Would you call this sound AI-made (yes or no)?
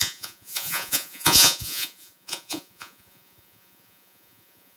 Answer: yes